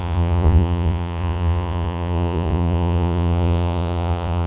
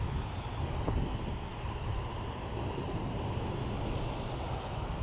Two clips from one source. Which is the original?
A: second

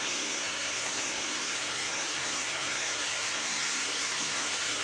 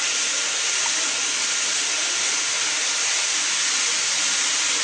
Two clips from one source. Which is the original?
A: second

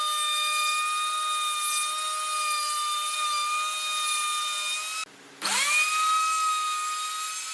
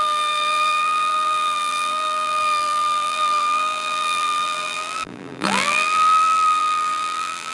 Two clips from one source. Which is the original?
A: first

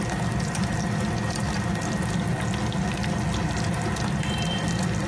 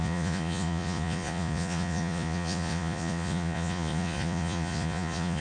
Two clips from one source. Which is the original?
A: first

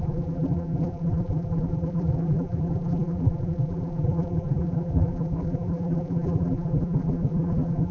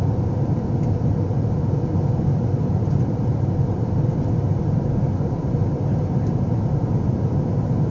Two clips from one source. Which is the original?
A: second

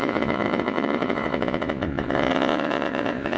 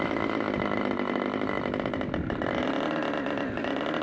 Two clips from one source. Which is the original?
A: second